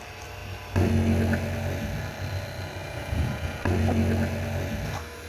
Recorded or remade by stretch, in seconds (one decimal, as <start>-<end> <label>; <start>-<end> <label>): 0.0-2.8 recorded; 2.8-3.6 remade; 3.6-5.3 recorded